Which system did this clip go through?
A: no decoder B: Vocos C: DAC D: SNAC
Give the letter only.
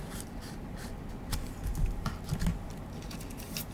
A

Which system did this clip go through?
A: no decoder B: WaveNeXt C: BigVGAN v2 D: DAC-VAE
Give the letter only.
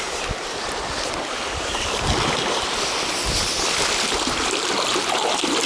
A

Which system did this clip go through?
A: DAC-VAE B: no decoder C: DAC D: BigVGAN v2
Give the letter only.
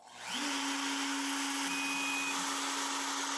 B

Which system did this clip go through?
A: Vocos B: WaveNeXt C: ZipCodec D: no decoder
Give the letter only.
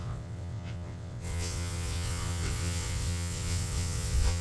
B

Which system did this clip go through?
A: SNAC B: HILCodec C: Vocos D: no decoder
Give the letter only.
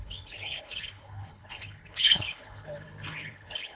B